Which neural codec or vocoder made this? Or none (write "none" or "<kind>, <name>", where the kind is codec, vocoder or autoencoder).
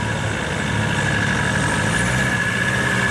none